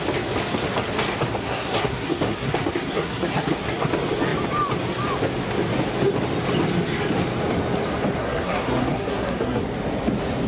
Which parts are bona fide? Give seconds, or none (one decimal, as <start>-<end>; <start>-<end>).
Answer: 0.0-1.3; 3.9-8.2; 9.6-10.5